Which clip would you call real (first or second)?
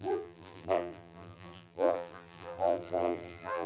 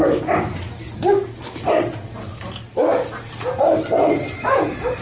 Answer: second